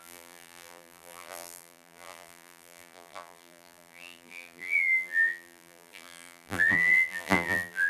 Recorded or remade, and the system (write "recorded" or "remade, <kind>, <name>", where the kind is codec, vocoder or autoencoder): remade, vocoder, BigVGAN v2